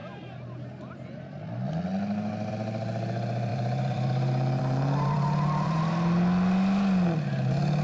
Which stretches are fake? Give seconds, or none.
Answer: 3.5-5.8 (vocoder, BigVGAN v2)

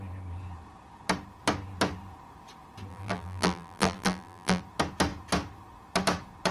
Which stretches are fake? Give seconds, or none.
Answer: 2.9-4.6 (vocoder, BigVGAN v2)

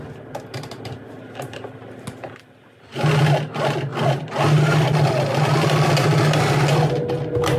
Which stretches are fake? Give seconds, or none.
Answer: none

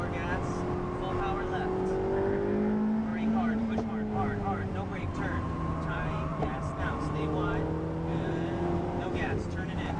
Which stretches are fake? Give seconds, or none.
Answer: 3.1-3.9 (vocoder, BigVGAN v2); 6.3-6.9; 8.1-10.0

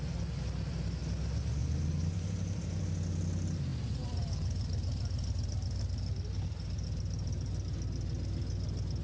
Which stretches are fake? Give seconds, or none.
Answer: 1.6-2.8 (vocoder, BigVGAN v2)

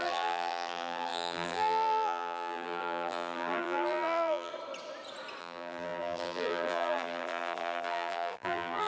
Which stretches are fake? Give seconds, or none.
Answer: 0.0-4.5 (vocoder, BigVGAN v2); 5.4-8.9